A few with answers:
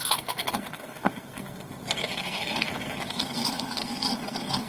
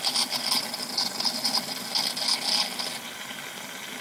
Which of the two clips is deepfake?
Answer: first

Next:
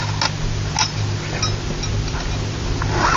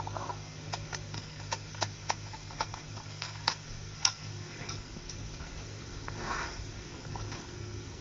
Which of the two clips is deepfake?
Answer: second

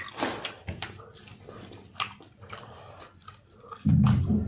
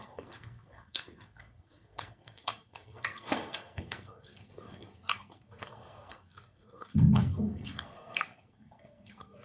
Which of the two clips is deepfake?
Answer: second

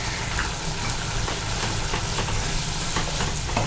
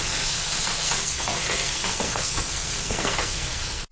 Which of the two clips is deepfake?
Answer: second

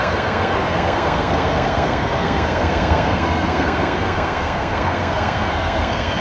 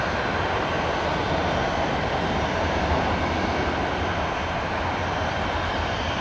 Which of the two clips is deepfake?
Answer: first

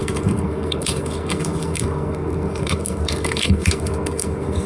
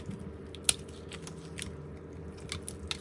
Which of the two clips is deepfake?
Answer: first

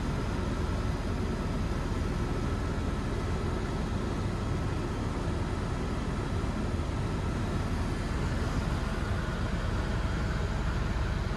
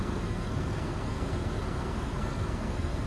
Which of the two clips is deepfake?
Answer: second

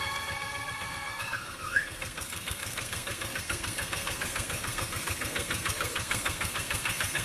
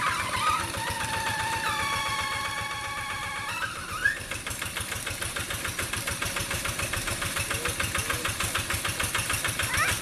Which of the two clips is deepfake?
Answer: first